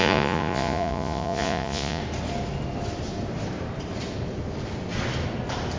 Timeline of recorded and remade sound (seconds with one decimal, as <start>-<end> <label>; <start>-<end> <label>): 0.0-2.0 remade; 2.0-5.8 recorded